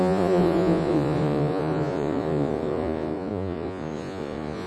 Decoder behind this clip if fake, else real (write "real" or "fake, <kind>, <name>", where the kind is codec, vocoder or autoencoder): fake, vocoder, Vocos